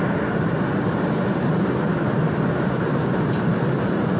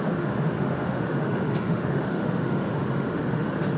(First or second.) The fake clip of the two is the second